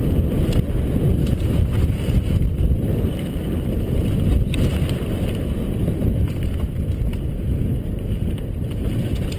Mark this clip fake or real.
fake